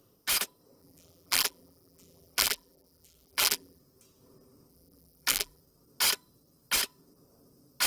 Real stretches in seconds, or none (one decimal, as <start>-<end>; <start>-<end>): 0.0-0.8; 3.8-4.7; 5.6-7.9